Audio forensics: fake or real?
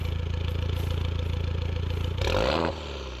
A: real